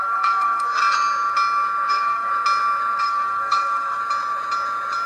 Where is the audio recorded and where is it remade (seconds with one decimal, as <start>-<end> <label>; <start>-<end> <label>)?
0.0-0.8 remade; 0.8-1.9 recorded; 1.9-2.3 remade; 2.3-3.0 recorded; 3.0-4.0 remade; 4.0-5.1 recorded